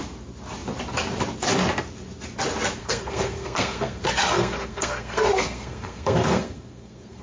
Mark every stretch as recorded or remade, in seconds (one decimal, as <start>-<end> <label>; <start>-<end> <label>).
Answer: 0.0-2.8 recorded; 2.8-7.2 remade